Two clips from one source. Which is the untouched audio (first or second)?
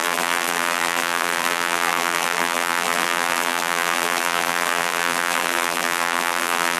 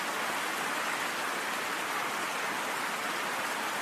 second